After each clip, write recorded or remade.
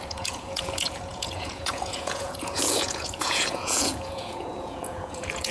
remade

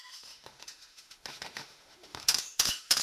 remade